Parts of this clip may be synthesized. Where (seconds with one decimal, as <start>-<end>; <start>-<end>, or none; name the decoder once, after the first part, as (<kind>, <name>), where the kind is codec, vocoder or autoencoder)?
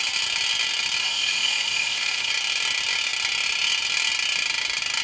1.0-2.3 (autoencoder, DAC-VAE)